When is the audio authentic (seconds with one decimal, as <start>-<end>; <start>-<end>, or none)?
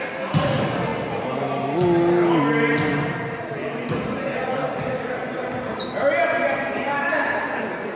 0.0-8.0